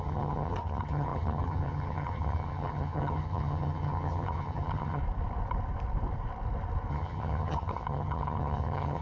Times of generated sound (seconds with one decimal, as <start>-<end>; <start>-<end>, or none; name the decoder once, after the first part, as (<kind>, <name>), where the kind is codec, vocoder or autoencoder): 0.0-5.0 (vocoder, HiFi-GAN); 6.9-9.0